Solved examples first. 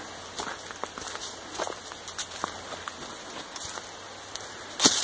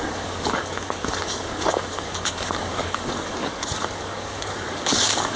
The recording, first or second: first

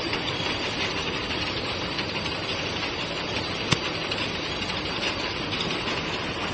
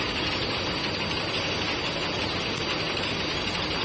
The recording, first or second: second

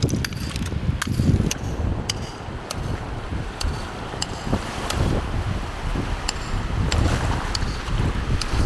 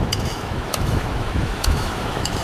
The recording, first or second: first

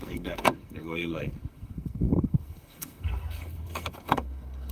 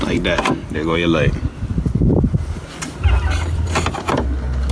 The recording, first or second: second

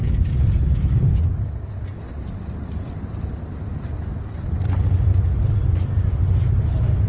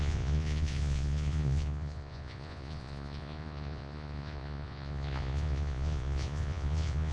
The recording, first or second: first